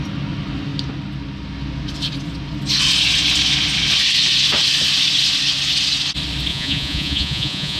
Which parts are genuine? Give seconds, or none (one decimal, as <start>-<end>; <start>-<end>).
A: 0.0-6.5